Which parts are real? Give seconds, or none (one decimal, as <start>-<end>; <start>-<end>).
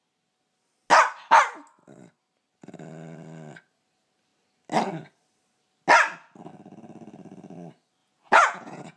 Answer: 0.0-8.0